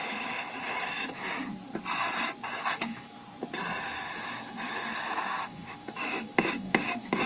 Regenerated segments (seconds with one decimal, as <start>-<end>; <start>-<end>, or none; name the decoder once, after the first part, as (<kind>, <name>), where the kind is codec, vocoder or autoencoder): 0.0-1.3 (autoencoder, DAC-VAE); 2.6-3.2; 3.8-7.3